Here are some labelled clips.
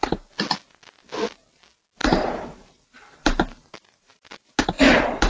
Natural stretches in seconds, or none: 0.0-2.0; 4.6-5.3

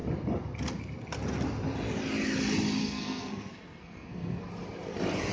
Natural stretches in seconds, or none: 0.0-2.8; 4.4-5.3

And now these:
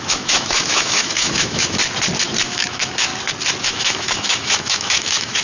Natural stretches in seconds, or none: 1.8-2.4; 3.1-3.6

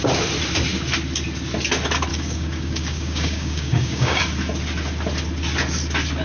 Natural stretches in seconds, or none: 0.0-2.1; 4.2-6.2